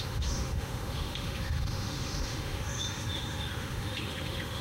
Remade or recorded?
remade